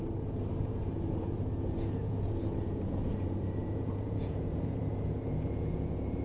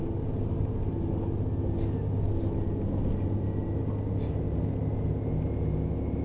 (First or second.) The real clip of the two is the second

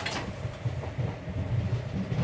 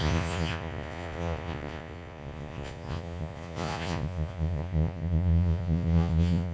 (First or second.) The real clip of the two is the first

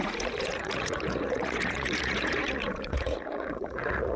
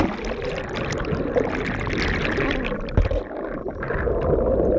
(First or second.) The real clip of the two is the second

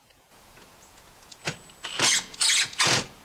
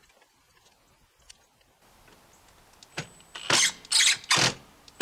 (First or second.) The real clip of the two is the second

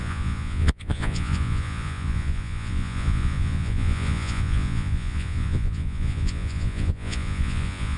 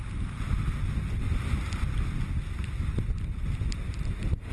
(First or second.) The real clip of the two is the second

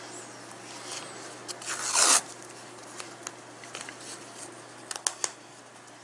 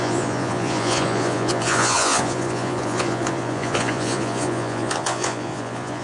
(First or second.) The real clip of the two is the first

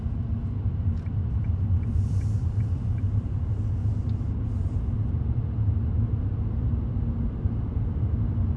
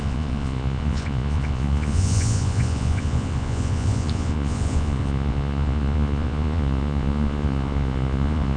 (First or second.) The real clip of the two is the first